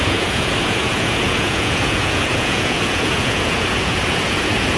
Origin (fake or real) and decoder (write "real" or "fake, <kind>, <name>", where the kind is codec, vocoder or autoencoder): fake, vocoder, Vocos